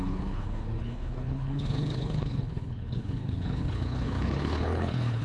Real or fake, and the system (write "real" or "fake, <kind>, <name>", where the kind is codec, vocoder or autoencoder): fake, codec, HILCodec